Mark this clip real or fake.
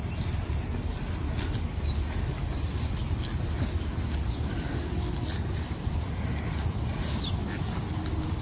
real